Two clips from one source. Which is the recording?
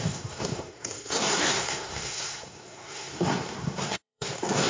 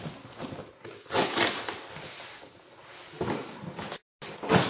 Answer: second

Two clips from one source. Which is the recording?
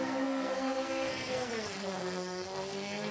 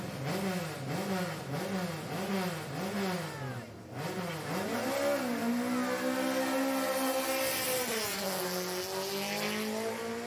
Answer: second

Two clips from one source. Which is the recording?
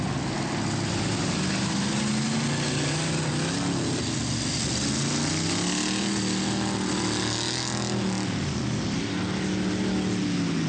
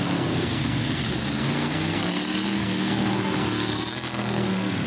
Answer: first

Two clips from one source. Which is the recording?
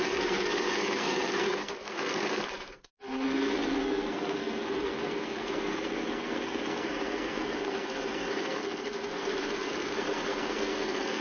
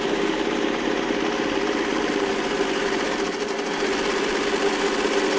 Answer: second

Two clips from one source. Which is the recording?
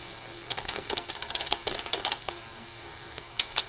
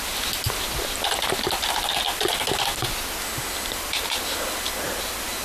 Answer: second